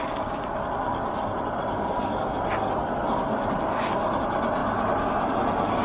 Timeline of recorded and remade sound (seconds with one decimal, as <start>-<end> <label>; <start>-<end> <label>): 0.0-5.8 recorded